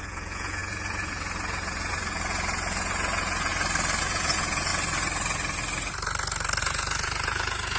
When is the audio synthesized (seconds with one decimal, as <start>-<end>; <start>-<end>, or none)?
0.0-3.5; 4.0-4.7; 6.6-7.8